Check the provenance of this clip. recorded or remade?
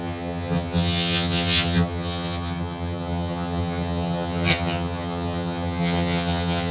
remade